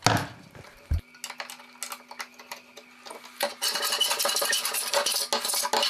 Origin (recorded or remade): recorded